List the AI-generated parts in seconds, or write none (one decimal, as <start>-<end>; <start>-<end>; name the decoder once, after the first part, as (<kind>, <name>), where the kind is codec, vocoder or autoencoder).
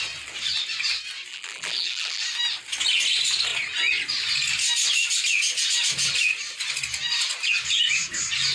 1.3-2.2 (vocoder, BigVGAN v2)